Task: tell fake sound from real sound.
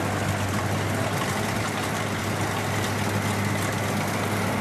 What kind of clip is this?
real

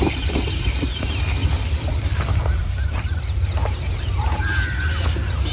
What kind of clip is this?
fake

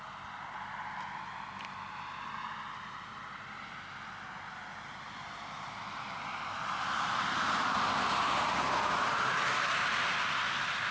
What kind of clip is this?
real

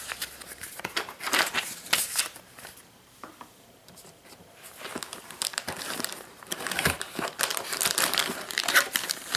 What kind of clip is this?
fake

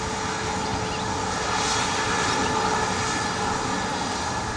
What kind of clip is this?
real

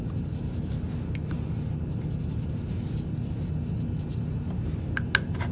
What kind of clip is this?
real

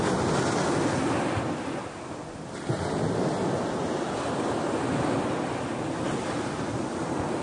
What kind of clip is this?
real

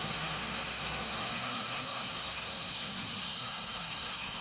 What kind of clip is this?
fake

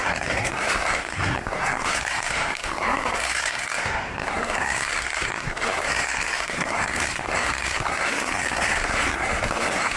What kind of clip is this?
fake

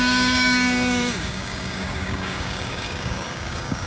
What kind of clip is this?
fake